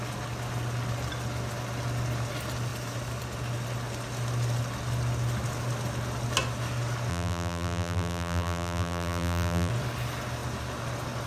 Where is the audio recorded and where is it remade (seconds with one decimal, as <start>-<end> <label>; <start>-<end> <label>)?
0.0-7.1 recorded; 7.1-9.7 remade; 9.7-11.3 recorded